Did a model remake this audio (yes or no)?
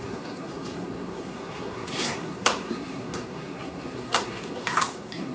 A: yes